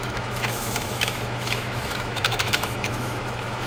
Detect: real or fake fake